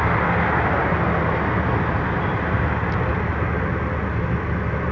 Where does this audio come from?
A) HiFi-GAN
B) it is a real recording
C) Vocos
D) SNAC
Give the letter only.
B